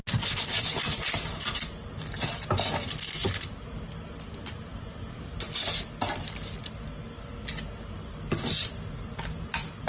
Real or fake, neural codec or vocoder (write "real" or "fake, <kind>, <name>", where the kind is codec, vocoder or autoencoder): real